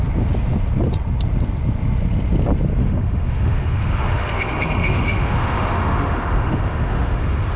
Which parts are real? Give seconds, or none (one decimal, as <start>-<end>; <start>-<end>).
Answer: 0.0-2.8